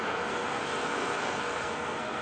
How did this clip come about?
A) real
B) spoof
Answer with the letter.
B